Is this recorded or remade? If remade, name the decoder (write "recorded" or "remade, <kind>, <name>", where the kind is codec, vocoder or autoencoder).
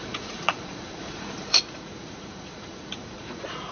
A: remade, vocoder, Vocos